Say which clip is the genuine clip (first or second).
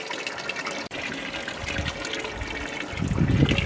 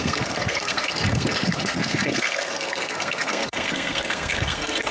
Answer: first